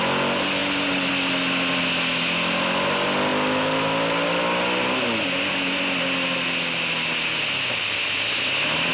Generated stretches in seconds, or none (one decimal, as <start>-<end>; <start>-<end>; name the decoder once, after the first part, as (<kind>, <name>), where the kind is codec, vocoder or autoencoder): none